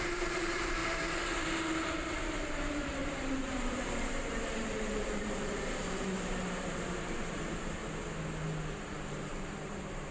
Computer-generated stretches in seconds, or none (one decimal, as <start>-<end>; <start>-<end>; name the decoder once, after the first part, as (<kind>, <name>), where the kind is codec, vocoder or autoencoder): 0.0-0.8 (vocoder, BigVGAN v2); 1.4-7.8; 8.8-10.1